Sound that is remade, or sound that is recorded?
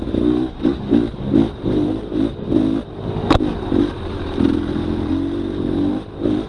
recorded